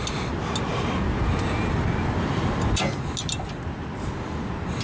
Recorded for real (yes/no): yes